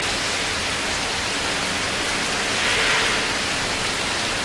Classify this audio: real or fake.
real